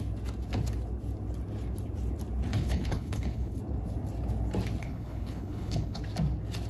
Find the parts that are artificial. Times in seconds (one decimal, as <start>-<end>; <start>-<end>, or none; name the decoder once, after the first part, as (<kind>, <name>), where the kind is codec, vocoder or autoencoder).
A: 2.5-3.6 (codec, HILCodec); 4.8-6.0